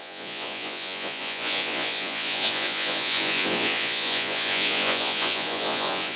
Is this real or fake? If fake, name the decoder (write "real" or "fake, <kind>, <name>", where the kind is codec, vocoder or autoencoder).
fake, vocoder, Vocos